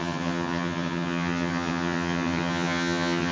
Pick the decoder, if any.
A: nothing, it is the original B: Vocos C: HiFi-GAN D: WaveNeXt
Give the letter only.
C